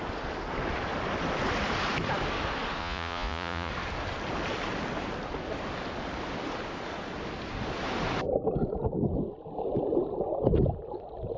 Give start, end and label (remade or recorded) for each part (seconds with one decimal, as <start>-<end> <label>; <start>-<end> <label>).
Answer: 0.0-2.8 recorded; 2.8-3.7 remade; 3.7-11.4 recorded